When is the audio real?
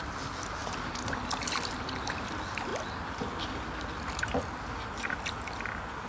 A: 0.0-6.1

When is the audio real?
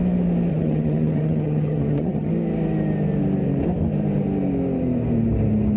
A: 0.0-0.5; 2.3-5.8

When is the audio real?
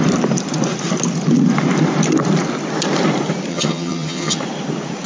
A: 0.0-3.5; 4.4-5.1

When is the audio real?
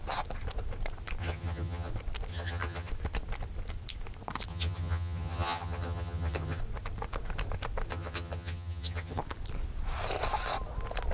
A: 0.0-1.2; 1.9-2.3; 2.9-4.5; 6.6-7.9; 9.2-11.1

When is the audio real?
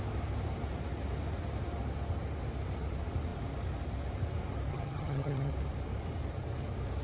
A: 0.0-4.7; 5.5-7.0